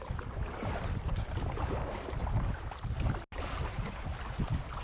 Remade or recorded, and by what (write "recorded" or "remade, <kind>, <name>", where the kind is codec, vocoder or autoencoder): recorded